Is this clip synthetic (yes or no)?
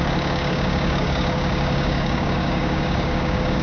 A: yes